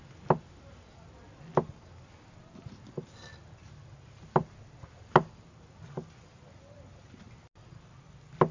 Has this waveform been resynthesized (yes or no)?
no